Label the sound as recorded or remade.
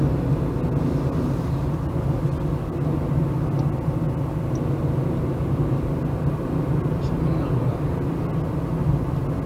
recorded